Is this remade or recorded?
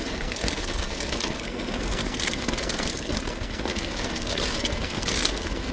remade